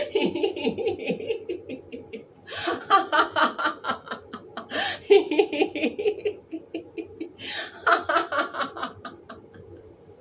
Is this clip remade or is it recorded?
recorded